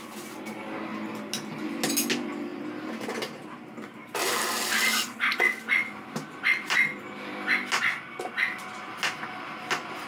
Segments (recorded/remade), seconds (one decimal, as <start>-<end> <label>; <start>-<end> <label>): 0.0-10.1 recorded